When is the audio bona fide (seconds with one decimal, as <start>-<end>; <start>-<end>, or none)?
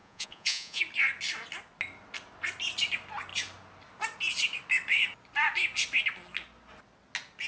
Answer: 0.8-7.5